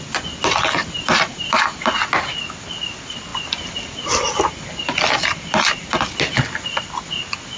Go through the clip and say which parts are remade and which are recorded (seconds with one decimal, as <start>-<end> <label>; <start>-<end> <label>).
0.0-0.8 recorded; 0.8-2.0 remade; 2.0-7.6 recorded